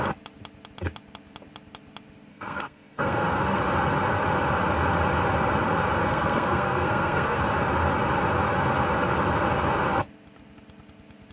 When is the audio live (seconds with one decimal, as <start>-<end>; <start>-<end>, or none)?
0.0-2.3; 3.6-6.0; 7.4-11.3